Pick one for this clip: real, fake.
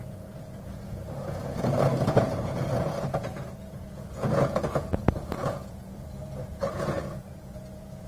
fake